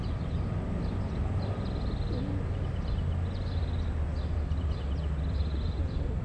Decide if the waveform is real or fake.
real